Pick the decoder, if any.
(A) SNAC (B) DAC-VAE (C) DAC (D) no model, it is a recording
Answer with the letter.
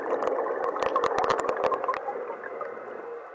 D